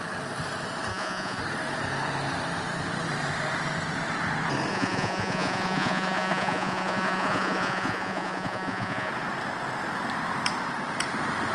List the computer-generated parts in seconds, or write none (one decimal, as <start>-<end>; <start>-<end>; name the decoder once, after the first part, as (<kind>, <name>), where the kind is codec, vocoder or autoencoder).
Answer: 0.9-1.4 (vocoder, Vocos); 4.7-9.1